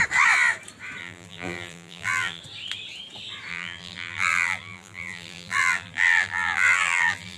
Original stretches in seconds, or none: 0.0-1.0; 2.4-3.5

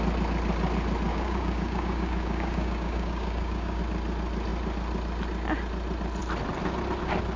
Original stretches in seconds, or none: 0.0-1.1; 3.8-7.4

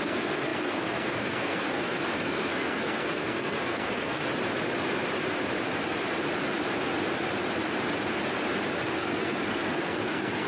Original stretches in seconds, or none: 4.2-8.9

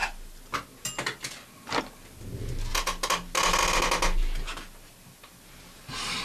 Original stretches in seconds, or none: 0.0-6.2

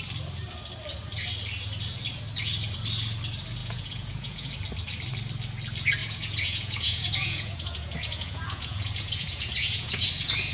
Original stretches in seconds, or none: 0.0-3.6; 4.5-6.0; 10.1-10.5

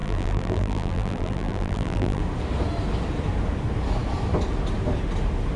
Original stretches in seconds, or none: 2.2-5.6